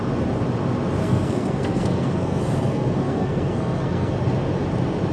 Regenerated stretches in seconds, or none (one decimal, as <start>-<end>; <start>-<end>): 1.0-4.1